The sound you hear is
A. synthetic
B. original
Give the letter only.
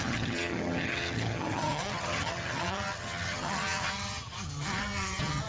A